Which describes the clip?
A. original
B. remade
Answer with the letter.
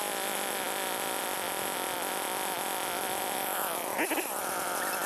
A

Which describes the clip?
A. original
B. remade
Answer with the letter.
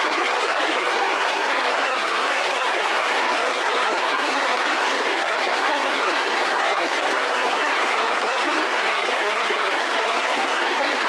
B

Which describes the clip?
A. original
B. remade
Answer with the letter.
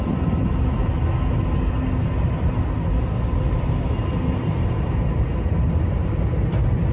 A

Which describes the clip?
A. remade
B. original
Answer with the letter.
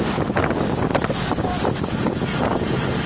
B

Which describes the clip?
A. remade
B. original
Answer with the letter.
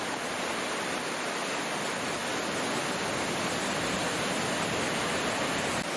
B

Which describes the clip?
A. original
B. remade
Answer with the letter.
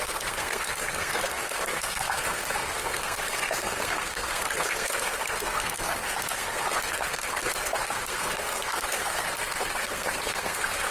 B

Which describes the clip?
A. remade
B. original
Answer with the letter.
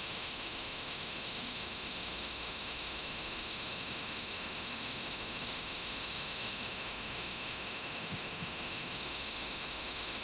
A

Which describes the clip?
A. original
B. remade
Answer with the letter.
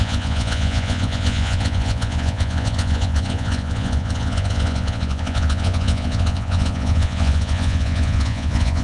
B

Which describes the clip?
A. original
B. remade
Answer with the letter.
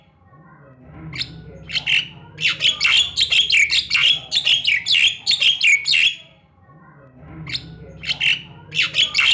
A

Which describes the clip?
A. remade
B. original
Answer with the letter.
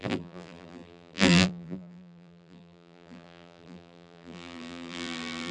A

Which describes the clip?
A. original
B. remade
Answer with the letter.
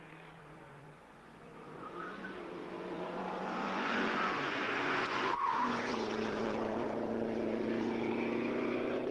B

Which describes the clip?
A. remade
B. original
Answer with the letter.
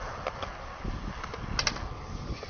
B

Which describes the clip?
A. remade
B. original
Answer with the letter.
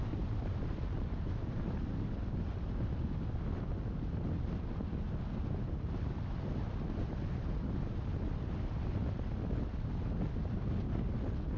B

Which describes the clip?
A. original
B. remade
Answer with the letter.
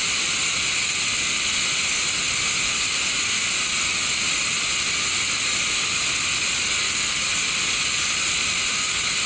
A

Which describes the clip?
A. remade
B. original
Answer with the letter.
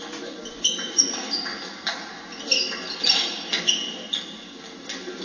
B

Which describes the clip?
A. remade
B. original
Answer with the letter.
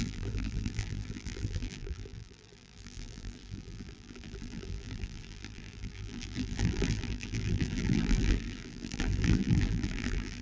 A